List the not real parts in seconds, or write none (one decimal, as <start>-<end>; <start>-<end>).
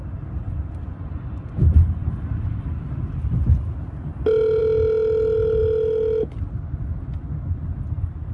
none